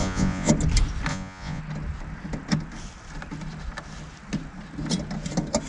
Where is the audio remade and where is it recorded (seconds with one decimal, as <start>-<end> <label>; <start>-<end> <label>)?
0.0-0.5 remade; 0.5-1.1 recorded; 1.1-1.6 remade; 1.6-5.7 recorded